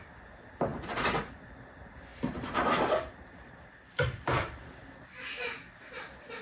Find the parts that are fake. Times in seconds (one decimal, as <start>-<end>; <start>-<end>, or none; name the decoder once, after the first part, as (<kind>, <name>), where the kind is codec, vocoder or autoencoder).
0.7-1.3 (vocoder, BigVGAN v2); 2.1-5.2